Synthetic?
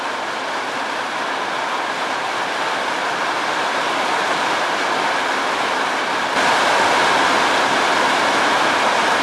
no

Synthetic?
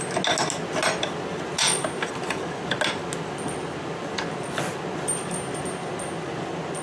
no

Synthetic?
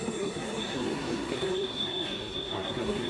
yes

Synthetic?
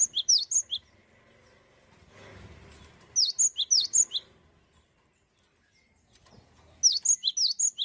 no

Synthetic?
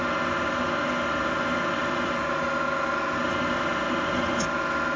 no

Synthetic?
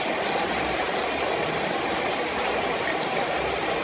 no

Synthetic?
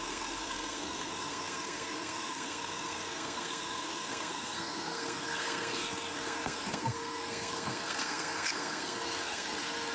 yes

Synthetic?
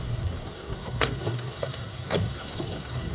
yes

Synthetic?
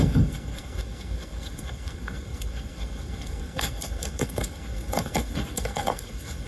yes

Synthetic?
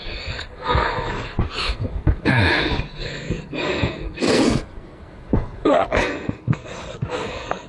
yes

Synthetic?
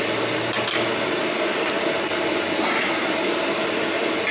no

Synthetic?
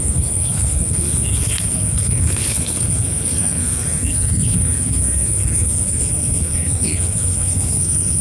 yes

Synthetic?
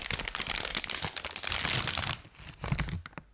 no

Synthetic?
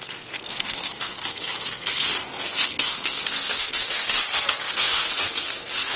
yes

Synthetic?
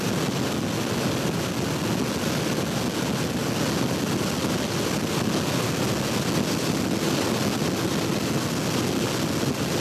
no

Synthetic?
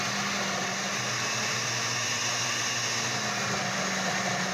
no